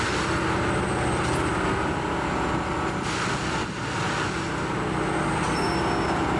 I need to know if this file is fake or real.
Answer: real